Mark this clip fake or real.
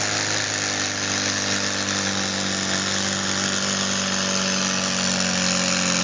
real